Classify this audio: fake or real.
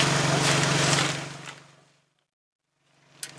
real